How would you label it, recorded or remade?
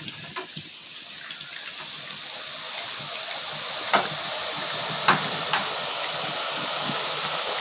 recorded